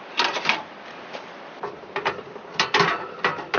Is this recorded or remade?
remade